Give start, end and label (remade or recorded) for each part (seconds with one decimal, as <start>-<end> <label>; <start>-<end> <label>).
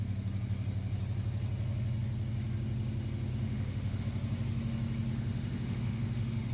0.0-3.3 recorded; 3.3-4.0 remade; 4.0-5.1 recorded; 5.1-6.5 remade